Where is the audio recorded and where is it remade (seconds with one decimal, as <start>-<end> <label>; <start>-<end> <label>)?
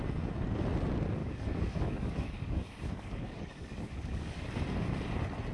0.0-1.2 recorded; 1.2-4.5 remade; 4.5-5.5 recorded